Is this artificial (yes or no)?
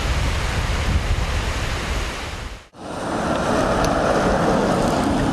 no